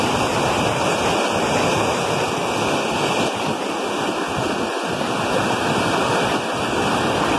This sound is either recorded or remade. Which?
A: recorded